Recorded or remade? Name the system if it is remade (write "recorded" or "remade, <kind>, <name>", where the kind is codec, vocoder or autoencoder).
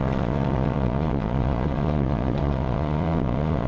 remade, vocoder, Vocos